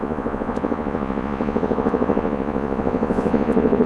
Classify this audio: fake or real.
fake